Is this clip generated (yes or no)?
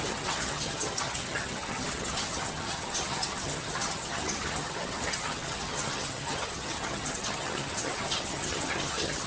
yes